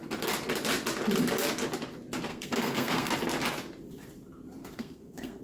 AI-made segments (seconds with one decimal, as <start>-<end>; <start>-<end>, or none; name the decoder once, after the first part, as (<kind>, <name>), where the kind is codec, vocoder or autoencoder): 2.3-3.1 (codec, SNAC); 4.6-5.4